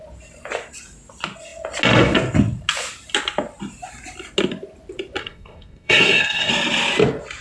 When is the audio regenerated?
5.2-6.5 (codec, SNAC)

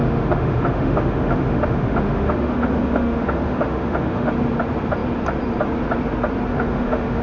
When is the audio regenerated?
0.0-4.3 (autoencoder, DAC-VAE); 6.5-7.2